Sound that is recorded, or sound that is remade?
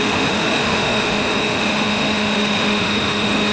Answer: remade